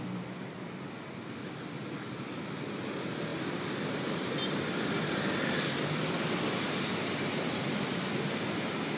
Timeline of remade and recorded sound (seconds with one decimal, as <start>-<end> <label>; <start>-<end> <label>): 0.0-3.3 recorded; 3.3-5.2 remade; 5.2-9.0 recorded